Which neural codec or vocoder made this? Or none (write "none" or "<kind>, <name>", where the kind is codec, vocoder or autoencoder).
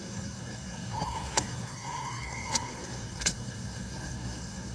codec, SNAC